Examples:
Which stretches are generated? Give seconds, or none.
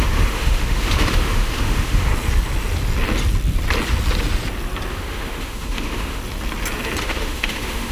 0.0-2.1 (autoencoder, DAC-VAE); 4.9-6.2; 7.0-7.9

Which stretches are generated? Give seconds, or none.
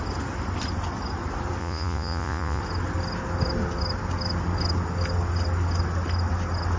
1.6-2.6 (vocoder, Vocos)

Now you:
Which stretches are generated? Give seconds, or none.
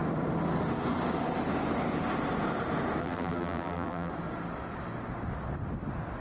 3.0-4.1 (vocoder, BigVGAN v2)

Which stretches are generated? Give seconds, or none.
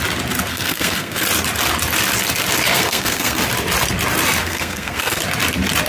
0.5-1.2 (codec, SNAC); 2.7-3.4; 4.4-5.2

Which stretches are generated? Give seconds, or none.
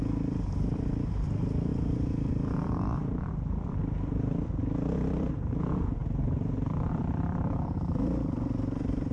0.0-9.1 (vocoder, BigVGAN v2)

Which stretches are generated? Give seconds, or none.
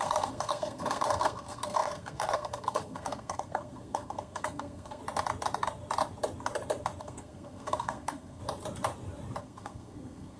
0.0-5.0 (codec, SNAC); 7.0-8.4; 9.4-10.4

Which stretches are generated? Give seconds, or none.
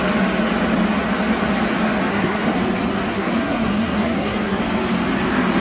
2.1-2.6 (codec, SNAC); 3.1-4.6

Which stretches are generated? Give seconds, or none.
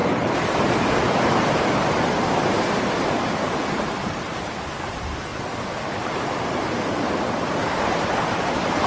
1.2-5.3 (vocoder, BigVGAN v2); 6.4-8.9